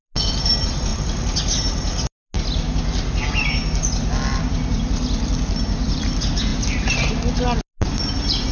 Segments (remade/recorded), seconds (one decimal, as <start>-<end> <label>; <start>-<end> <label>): 0.0-8.5 recorded